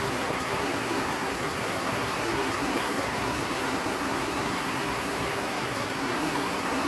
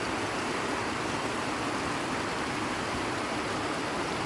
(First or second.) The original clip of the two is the second